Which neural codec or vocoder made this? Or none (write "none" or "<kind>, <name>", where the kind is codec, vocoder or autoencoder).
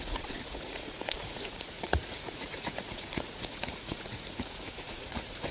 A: vocoder, Vocos